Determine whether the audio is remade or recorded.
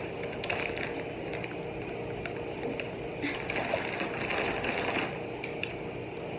recorded